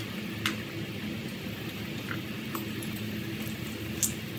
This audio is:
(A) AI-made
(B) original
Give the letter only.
B